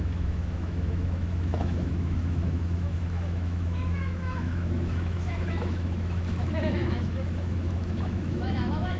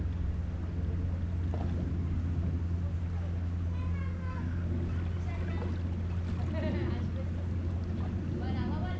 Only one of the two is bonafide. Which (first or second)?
second